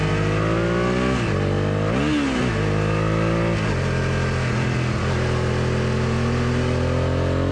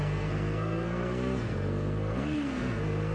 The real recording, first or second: first